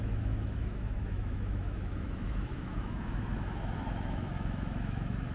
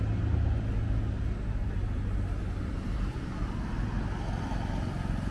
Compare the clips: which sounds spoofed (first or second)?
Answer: first